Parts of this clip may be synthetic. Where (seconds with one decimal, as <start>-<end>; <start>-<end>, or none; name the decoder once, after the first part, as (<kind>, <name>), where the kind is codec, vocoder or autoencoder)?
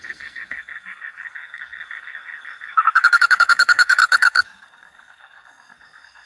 0.0-6.3 (codec, SNAC)